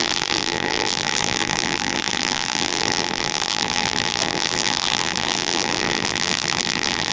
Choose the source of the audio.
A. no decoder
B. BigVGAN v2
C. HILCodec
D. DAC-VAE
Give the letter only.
B